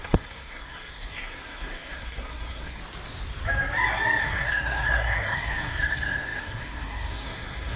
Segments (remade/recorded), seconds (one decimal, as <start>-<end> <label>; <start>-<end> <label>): 0.0-2.8 remade; 2.8-4.2 recorded; 4.2-7.8 remade